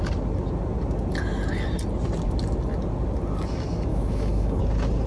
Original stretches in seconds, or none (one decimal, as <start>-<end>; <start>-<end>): 0.0-3.9; 4.6-5.1